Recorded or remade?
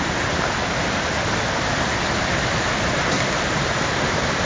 recorded